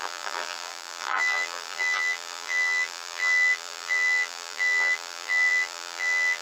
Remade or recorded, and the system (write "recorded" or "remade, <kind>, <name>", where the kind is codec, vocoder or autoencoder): remade, vocoder, BigVGAN v2